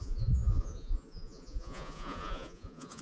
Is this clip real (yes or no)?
no